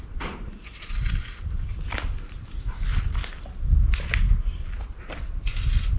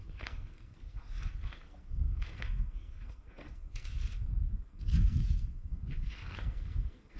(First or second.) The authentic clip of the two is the first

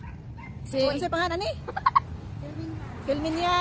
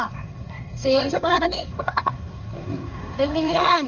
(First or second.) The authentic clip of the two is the first